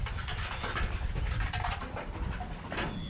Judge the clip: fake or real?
real